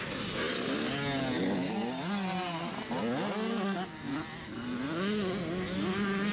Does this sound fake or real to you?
real